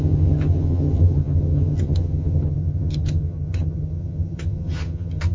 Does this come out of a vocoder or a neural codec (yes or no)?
yes